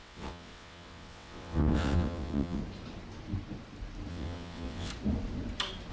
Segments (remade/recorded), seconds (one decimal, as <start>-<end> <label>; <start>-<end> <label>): 0.0-2.6 remade; 2.6-4.1 recorded; 4.1-4.9 remade; 4.9-5.9 recorded